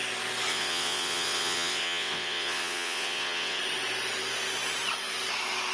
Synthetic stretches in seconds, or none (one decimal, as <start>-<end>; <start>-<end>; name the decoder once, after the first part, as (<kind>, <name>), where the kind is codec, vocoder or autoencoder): 0.5-3.6 (vocoder, WaveNeXt)